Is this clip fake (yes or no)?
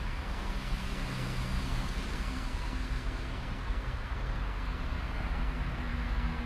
yes